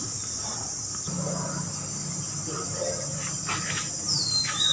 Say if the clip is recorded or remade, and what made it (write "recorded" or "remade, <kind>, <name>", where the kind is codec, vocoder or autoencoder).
recorded